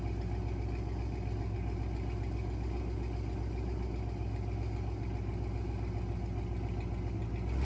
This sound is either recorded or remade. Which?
recorded